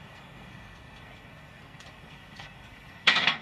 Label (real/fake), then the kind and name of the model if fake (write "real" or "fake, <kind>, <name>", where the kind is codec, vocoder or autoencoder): fake, codec, SNAC